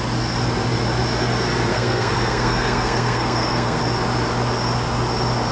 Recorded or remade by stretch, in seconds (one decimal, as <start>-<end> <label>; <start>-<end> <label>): 0.0-1.7 recorded; 1.7-3.8 remade; 3.8-5.5 recorded